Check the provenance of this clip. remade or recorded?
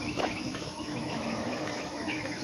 remade